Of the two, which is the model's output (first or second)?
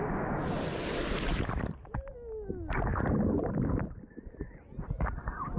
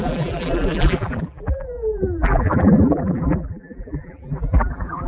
second